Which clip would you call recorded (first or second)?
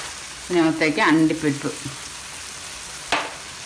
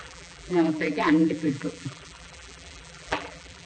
first